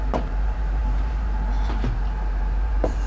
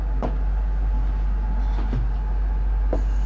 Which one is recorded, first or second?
second